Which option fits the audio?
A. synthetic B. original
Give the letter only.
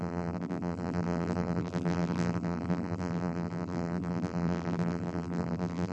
A